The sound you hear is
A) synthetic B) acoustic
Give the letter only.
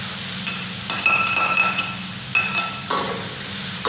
B